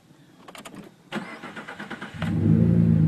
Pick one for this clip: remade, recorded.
recorded